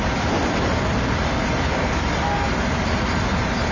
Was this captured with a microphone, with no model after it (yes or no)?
yes